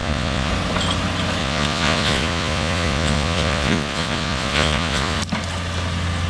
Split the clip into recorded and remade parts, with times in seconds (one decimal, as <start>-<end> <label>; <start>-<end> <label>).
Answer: 0.0-0.5 remade; 0.5-1.4 recorded; 1.4-5.2 remade; 5.2-6.3 recorded